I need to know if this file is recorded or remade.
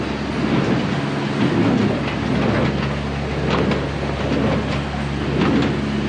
recorded